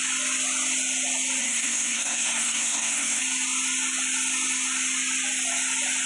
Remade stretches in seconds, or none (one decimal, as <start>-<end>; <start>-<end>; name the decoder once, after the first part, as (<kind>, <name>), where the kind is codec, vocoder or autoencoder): 1.4-3.2 (codec, SNAC)